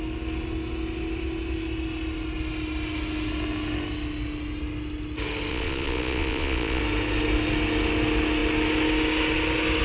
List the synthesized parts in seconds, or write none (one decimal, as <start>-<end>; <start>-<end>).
5.5-6.8